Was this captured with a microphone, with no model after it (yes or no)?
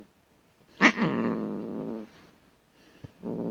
yes